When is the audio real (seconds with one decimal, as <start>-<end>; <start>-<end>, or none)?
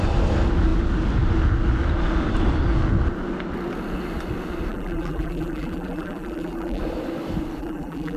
0.0-4.7; 6.8-7.6